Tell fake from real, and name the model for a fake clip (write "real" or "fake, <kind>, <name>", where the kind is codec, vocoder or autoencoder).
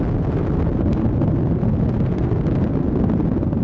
real